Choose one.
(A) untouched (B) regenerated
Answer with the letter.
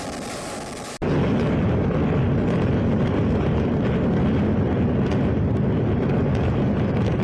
A